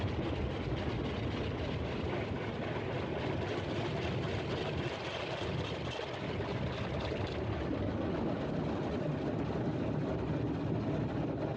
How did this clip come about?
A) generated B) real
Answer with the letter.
B